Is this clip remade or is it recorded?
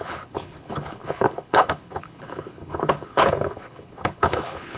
remade